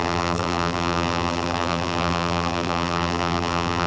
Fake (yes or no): yes